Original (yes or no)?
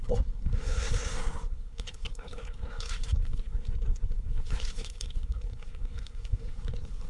no